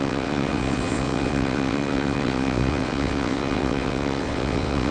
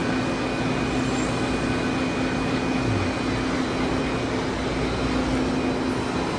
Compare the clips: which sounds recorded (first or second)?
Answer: second